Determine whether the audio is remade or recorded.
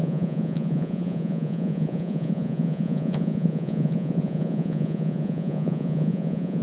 remade